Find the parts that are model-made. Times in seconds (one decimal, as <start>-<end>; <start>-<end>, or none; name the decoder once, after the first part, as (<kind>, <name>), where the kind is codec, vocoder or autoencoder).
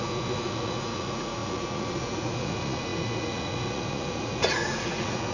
0.0-5.3 (vocoder, Vocos)